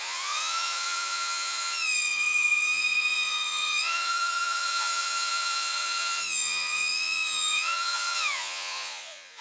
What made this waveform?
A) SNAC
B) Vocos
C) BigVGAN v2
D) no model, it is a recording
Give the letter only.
B